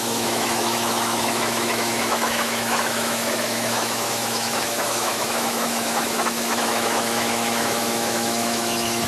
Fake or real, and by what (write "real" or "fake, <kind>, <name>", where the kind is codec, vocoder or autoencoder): fake, autoencoder, DAC-VAE